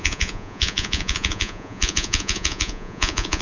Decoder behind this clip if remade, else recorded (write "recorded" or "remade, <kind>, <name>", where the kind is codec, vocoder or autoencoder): remade, vocoder, Vocos